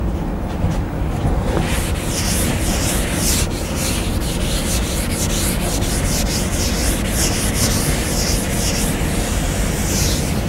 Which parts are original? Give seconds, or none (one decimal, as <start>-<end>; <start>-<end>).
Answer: 0.0-10.5